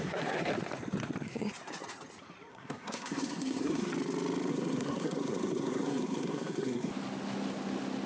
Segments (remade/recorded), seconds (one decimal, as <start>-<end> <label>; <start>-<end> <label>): 0.0-0.5 remade; 0.5-2.5 recorded; 2.5-3.9 remade; 3.9-4.5 recorded; 4.5-6.9 remade; 6.9-8.1 recorded